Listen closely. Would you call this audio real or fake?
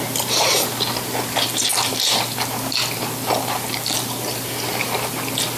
real